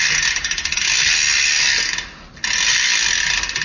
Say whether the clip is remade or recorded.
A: recorded